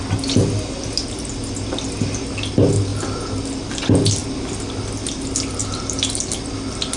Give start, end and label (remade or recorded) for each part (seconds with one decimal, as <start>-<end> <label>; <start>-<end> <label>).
0.0-7.0 recorded